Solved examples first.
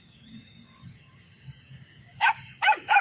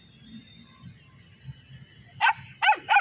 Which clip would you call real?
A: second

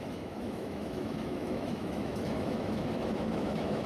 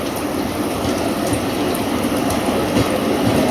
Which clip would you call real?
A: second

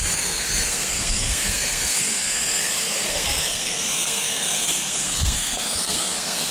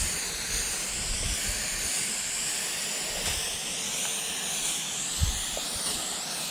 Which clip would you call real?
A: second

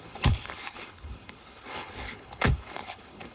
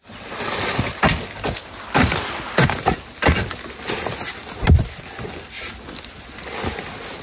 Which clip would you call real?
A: second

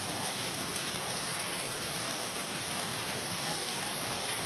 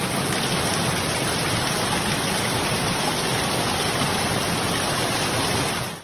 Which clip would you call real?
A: second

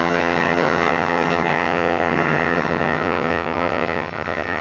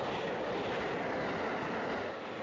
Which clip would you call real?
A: second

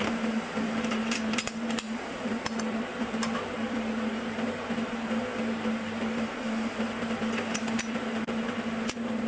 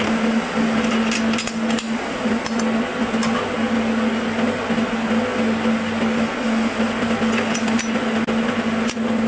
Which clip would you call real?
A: second